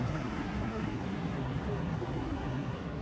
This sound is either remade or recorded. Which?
remade